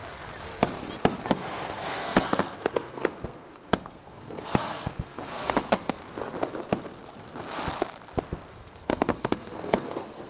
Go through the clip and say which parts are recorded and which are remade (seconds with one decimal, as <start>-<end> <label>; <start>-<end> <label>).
0.0-1.3 recorded; 1.3-6.0 remade; 6.0-8.5 recorded; 8.5-10.3 remade